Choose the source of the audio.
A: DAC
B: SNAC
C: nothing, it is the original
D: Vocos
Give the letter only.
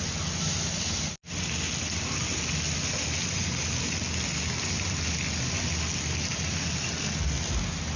C